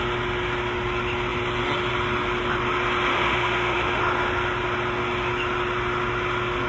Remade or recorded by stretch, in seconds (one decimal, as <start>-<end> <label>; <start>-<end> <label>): 0.0-3.1 recorded; 3.1-4.0 remade; 4.0-6.7 recorded